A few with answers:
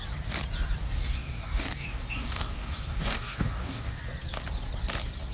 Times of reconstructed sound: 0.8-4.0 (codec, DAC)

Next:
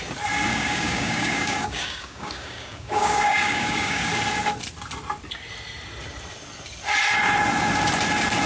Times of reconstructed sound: 0.5-4.1 (codec, DAC)

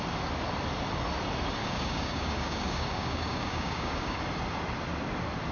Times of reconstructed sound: 1.6-4.2 (codec, DAC)

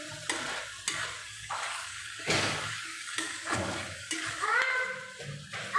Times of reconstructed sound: 1.2-4.6 (codec, DAC)

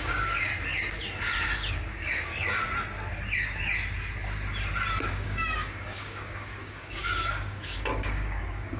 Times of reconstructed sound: 0.0-0.5 (codec, DAC); 1.7-2.6; 5.1-8.8